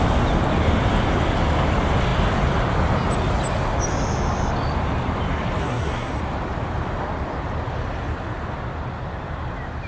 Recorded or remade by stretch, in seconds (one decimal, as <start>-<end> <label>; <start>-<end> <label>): 0.0-5.6 recorded; 5.6-6.2 remade; 6.2-9.9 recorded